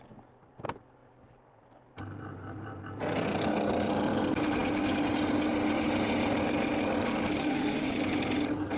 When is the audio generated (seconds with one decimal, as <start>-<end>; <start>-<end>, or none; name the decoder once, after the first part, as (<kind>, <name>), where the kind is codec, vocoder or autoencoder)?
7.4-7.9 (autoencoder, DAC-VAE)